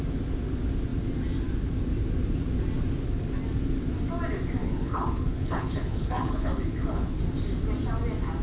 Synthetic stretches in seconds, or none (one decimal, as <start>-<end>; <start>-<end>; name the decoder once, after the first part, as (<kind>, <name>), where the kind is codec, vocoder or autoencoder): 4.6-7.2 (codec, HILCodec)